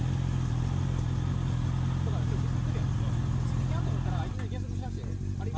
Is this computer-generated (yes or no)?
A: no